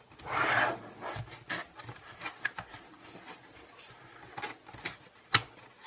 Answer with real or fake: real